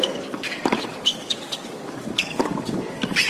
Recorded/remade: remade